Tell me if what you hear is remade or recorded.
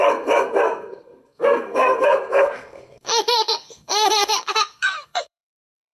remade